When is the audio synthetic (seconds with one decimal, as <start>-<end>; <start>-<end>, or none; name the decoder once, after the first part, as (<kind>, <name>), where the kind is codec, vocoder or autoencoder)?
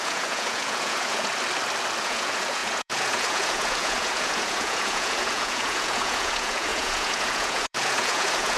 0.0-1.3 (vocoder, Vocos); 2.0-8.6